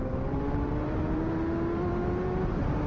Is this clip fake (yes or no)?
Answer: yes